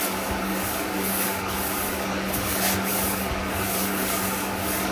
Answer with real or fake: fake